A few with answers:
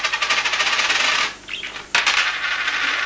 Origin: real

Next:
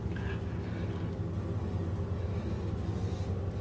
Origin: real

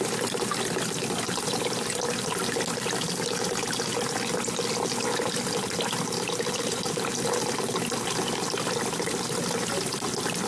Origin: real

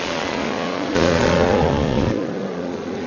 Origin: fake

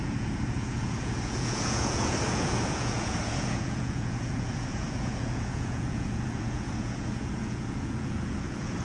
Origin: fake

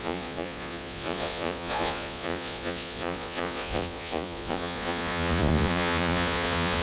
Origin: fake